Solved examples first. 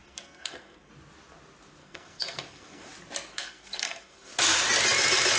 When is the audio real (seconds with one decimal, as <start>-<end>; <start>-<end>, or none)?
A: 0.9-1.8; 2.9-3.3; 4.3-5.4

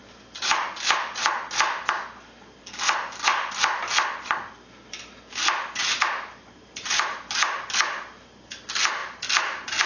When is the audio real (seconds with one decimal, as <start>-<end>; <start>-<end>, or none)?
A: 0.0-9.9

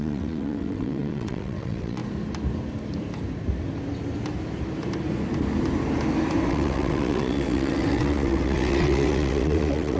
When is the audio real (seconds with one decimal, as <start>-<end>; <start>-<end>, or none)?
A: 2.0-6.5

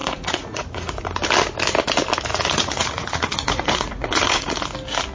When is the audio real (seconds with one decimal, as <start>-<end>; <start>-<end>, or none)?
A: 1.0-2.3; 4.5-5.1

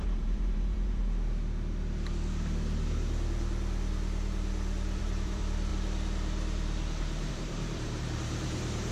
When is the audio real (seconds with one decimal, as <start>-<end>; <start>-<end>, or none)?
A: 1.0-5.0; 5.7-7.3

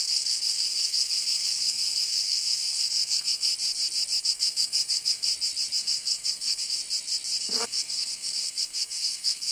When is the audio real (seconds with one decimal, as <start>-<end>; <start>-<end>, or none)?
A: 3.5-4.2; 5.3-5.8; 6.8-7.4

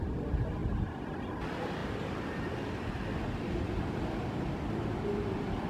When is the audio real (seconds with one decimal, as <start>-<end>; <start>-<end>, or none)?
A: 0.0-0.6; 1.3-1.8; 4.5-5.7

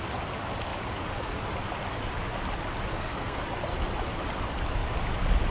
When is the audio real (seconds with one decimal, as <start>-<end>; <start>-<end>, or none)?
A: 0.0-2.9; 3.4-5.5